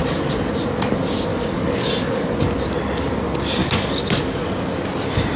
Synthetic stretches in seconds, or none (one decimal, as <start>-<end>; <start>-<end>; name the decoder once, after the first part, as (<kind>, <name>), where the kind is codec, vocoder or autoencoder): 1.3-2.3 (codec, DAC); 3.6-4.7